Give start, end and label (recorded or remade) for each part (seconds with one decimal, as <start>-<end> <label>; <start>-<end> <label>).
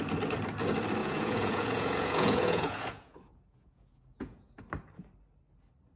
0.0-1.0 recorded; 1.0-4.6 remade; 4.6-6.0 recorded